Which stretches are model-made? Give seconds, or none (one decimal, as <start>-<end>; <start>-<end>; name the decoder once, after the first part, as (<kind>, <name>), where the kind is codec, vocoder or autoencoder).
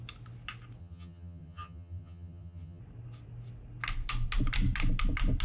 0.8-2.8 (vocoder, HiFi-GAN)